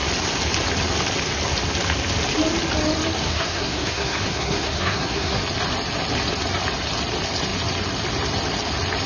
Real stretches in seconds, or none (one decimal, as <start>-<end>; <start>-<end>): 0.0-3.2; 5.4-9.1